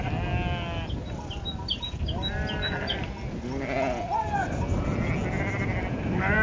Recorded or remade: recorded